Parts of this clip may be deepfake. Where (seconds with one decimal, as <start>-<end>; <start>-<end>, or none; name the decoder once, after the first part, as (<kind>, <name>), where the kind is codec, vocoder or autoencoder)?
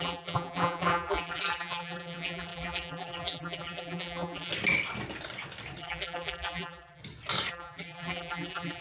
0.0-4.5 (vocoder, BigVGAN v2); 5.8-7.0; 7.5-8.8